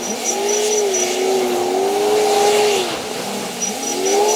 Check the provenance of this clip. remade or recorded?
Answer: recorded